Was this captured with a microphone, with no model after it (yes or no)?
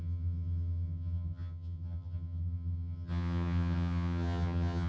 no